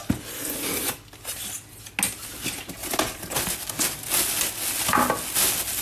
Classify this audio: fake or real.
real